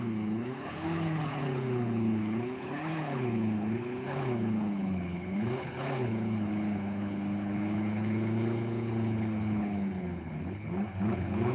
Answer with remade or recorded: remade